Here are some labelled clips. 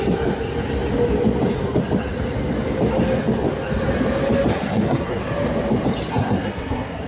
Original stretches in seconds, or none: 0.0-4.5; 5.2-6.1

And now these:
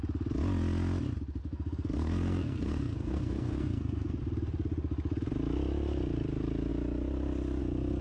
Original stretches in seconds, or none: 0.0-1.4; 4.2-8.0

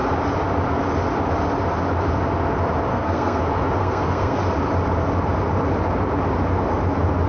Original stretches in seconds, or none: 0.0-2.9; 3.4-3.8; 4.4-7.3

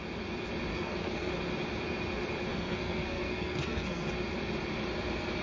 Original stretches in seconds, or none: 0.0-0.7; 1.3-2.5; 4.1-5.4